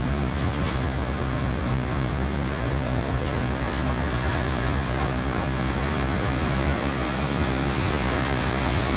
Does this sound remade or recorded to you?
remade